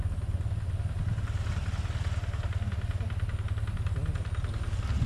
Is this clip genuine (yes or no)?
yes